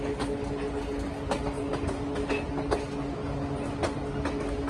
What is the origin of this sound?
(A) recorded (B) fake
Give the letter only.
A